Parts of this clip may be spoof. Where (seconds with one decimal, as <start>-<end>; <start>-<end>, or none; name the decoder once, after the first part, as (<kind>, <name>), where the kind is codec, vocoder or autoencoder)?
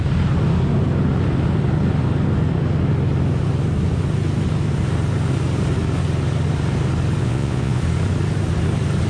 7.2-7.8 (vocoder, Vocos)